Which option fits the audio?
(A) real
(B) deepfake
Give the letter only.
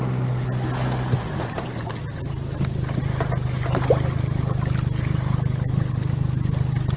A